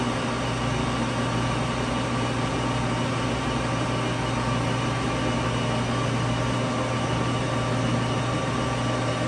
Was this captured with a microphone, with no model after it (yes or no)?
yes